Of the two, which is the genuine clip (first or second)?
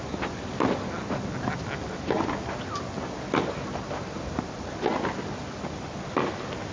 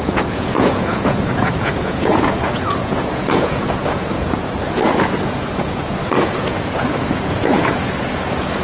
first